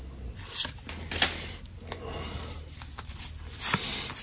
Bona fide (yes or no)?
yes